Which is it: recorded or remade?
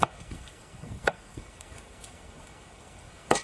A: remade